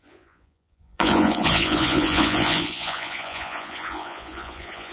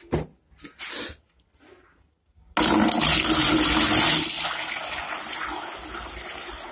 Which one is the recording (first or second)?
second